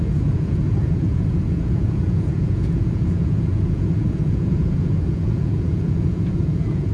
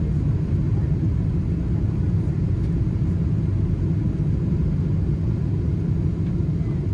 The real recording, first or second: second